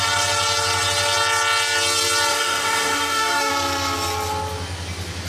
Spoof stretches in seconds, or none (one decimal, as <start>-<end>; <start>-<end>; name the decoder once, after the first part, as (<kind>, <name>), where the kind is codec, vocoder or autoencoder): 2.3-3.5 (codec, DAC)